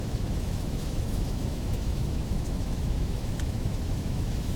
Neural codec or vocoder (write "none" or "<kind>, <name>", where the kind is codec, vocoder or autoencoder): autoencoder, DAC-VAE